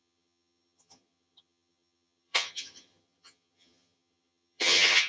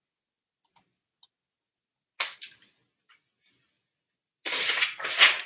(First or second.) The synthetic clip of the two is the first